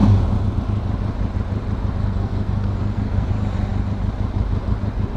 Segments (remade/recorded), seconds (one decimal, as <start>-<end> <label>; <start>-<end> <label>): 0.0-2.0 recorded; 2.0-3.3 remade; 3.3-5.2 recorded